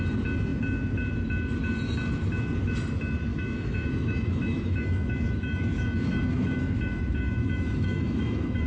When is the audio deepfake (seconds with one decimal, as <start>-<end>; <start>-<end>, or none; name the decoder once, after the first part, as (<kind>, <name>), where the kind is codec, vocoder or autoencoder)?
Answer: 3.3-8.7 (autoencoder, DAC-VAE)